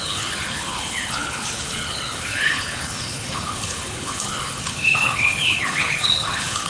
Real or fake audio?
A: fake